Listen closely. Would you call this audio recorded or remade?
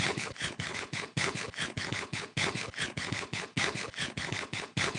remade